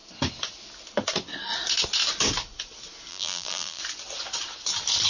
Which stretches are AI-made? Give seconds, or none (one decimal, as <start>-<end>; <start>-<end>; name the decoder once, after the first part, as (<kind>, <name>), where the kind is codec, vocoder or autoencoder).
3.1-3.8 (vocoder, BigVGAN v2)